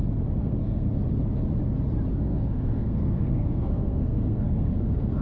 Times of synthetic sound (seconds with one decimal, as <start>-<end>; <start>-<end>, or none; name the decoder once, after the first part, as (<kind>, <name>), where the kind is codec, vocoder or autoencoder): 0.4-0.9 (codec, SNAC); 2.1-5.2